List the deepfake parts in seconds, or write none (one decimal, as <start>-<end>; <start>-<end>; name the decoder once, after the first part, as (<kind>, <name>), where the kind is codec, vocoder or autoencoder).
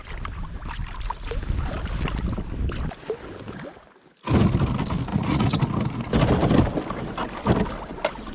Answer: 5.1-5.6 (vocoder, Vocos)